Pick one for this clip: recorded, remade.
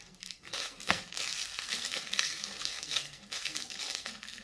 remade